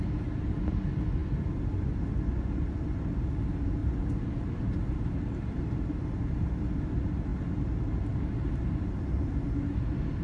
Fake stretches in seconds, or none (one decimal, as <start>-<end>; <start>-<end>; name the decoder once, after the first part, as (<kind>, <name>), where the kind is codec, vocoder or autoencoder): 3.8-6.7 (vocoder, BigVGAN v2)